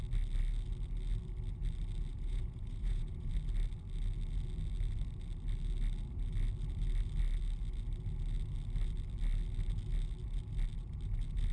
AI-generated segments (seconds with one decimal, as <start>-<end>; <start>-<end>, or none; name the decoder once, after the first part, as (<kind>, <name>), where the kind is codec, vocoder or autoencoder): 2.1-3.3 (vocoder, Vocos)